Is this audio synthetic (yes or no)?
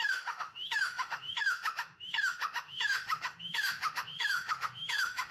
yes